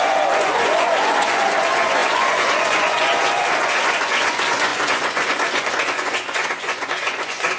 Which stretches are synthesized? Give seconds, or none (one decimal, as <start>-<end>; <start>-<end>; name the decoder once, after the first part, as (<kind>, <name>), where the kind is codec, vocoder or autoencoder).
0.0-7.6 (vocoder, Vocos)